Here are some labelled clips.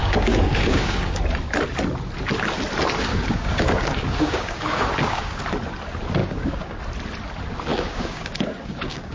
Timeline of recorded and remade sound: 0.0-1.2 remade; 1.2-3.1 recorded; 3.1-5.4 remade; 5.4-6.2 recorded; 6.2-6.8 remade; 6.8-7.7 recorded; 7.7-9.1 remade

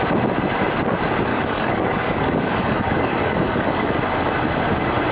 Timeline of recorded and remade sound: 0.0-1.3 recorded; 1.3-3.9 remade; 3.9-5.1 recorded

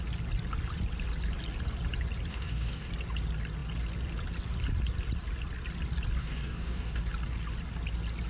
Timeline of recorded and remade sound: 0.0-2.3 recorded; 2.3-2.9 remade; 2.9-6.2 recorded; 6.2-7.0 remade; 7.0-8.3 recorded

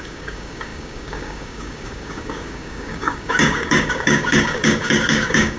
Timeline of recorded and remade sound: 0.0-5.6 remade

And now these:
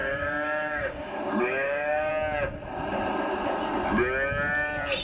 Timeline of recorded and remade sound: 0.0-2.1 remade; 2.1-5.0 recorded